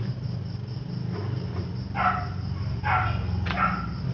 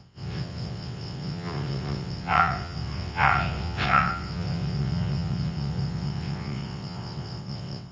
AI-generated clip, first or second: second